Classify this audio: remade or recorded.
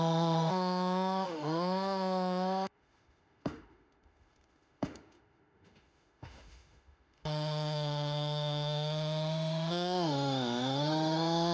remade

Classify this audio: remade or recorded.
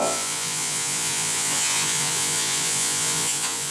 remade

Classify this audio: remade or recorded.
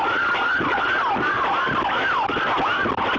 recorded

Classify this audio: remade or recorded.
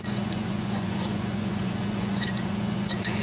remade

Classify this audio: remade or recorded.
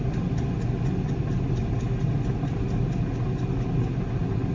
recorded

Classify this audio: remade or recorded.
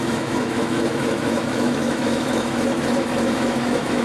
remade